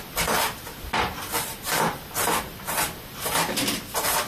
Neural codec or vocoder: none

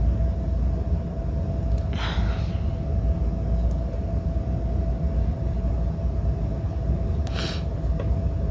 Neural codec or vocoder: none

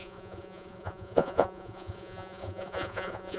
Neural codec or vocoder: vocoder, Vocos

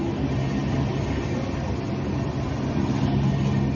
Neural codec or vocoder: none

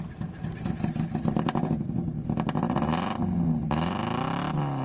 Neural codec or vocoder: none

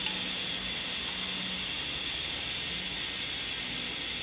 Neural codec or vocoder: none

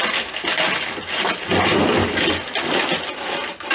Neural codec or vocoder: none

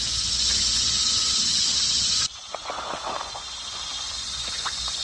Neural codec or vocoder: vocoder, Vocos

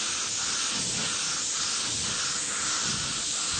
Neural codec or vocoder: none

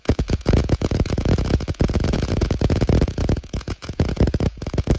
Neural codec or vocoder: vocoder, Vocos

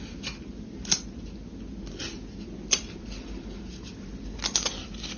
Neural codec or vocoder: none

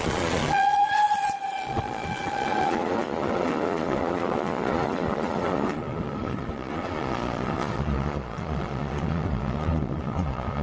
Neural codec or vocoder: vocoder, Vocos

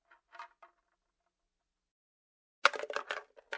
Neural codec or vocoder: none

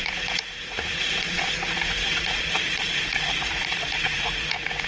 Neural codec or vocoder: vocoder, Vocos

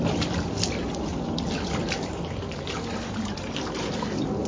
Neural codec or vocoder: none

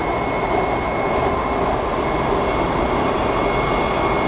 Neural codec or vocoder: none